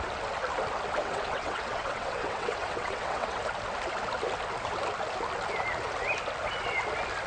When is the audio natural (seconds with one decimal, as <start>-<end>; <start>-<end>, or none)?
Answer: 0.0-1.0; 3.4-7.3